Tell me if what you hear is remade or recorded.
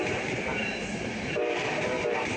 remade